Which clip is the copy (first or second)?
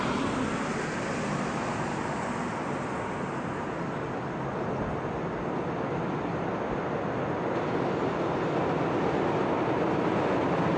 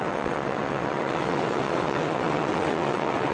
second